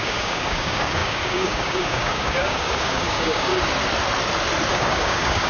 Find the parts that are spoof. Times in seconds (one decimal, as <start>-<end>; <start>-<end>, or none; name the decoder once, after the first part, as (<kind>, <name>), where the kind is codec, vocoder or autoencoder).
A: 0.0-3.5 (codec, DAC); 4.7-5.5